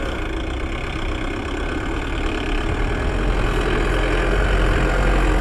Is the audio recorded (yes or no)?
yes